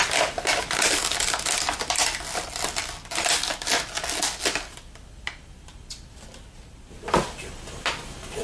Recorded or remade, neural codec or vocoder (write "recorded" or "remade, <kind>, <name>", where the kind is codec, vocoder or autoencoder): recorded